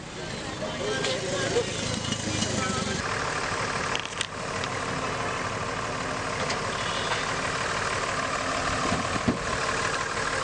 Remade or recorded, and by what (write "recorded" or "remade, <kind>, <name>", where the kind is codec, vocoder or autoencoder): recorded